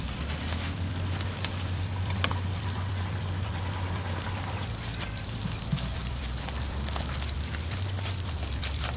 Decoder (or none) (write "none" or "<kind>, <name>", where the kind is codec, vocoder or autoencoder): vocoder, BigVGAN v2